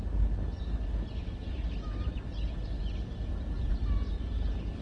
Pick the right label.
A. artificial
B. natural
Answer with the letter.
B